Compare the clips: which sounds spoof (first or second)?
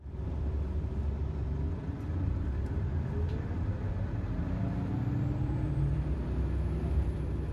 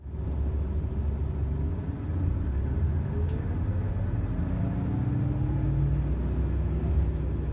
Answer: first